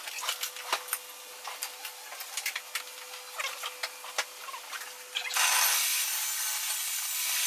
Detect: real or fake real